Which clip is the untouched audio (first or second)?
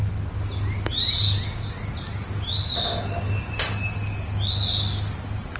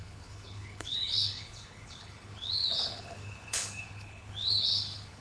first